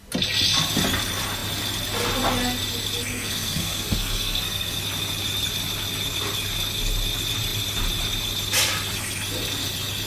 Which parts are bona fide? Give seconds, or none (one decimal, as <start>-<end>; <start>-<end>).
0.0-3.1; 4.8-10.1